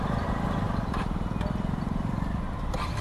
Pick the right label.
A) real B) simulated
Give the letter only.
B